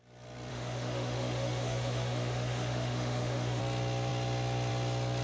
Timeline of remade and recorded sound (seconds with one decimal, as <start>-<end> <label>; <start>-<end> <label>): 0.0-0.5 recorded; 0.5-3.6 remade; 3.6-5.2 recorded